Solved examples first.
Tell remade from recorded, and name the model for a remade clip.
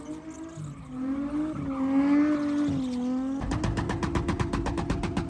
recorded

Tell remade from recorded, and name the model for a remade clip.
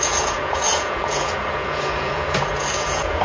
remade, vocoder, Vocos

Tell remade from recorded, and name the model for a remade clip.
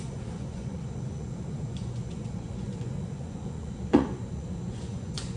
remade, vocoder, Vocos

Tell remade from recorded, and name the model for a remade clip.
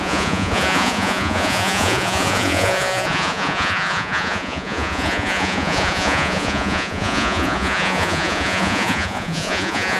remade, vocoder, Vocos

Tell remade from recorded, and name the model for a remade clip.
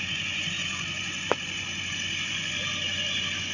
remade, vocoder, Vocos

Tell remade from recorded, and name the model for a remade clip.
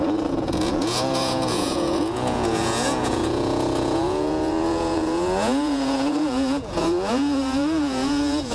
remade, vocoder, Vocos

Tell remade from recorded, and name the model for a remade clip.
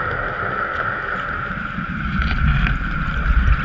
recorded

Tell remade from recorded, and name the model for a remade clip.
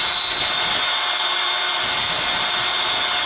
recorded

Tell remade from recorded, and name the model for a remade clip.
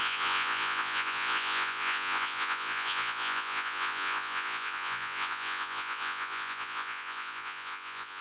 remade, vocoder, Vocos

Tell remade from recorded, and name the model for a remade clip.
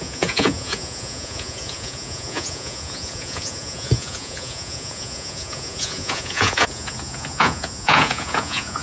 remade, vocoder, Vocos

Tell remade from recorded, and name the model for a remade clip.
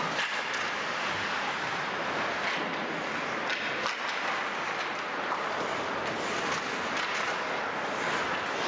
recorded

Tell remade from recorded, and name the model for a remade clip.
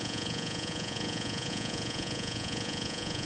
remade, vocoder, Vocos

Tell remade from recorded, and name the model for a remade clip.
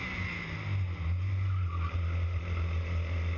recorded